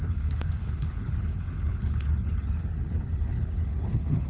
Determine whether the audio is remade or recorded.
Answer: remade